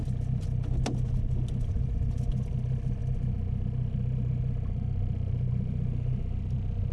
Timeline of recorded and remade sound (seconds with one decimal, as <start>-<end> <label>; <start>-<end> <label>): 0.0-6.9 recorded